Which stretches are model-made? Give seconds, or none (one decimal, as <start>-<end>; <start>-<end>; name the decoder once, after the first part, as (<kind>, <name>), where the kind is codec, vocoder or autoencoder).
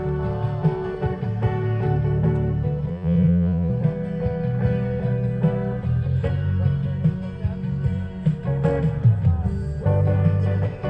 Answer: 2.9-3.7 (vocoder, Vocos)